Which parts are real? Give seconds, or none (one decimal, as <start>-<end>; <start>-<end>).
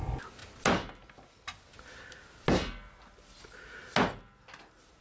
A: 0.0-5.0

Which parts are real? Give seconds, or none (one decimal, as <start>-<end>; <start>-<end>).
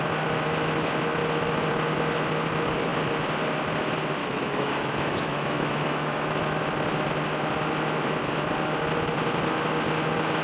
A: 0.0-4.2; 6.4-10.4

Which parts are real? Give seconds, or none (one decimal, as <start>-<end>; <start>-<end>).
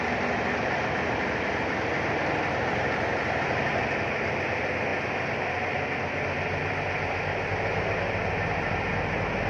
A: 0.0-9.5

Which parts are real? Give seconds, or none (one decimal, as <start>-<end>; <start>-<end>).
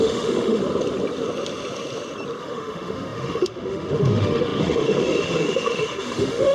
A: 0.6-2.4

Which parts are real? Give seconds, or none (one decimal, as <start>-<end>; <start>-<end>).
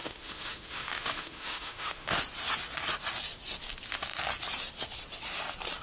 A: 2.2-5.8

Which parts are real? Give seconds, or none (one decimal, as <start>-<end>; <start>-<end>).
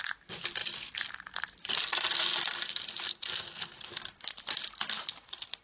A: 0.0-5.6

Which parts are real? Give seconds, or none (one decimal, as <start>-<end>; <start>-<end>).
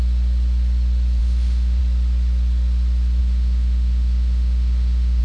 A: 0.0-1.2; 1.8-3.2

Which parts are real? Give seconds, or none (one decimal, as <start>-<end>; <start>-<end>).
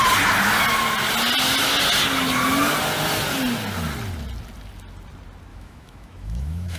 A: 0.0-5.5